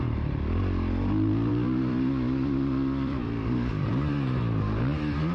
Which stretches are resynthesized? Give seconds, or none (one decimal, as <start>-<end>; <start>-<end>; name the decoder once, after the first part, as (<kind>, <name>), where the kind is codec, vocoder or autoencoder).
1.5-3.9 (vocoder, BigVGAN v2)